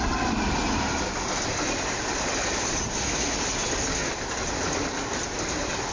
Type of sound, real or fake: real